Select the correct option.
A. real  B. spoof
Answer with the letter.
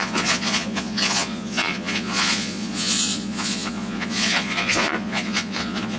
B